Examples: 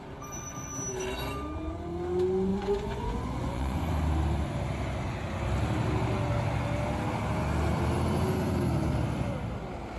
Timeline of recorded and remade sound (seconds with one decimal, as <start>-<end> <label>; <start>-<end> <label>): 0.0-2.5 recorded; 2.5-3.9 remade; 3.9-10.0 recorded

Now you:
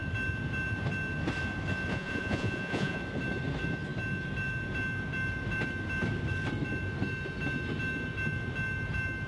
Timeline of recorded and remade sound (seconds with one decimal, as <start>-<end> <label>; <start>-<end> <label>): 0.0-1.9 recorded; 1.9-3.0 remade; 3.0-9.3 recorded

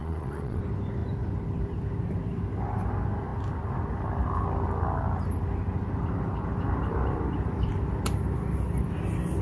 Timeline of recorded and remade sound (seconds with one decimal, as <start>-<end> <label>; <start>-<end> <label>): 0.0-0.6 remade; 0.6-9.4 recorded

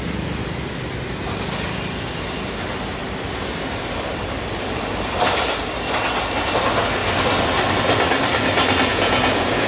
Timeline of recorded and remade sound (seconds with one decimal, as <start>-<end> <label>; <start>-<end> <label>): 0.0-8.9 recorded; 8.9-9.7 remade

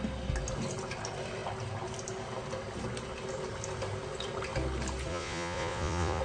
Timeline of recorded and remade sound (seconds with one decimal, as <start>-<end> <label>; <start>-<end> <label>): 0.0-5.1 recorded; 5.1-6.2 remade

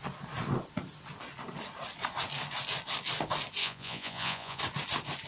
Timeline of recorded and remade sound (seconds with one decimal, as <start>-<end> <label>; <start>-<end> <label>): 0.0-3.6 recorded; 3.6-4.6 remade; 4.6-5.3 recorded